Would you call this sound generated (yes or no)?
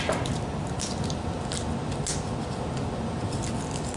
no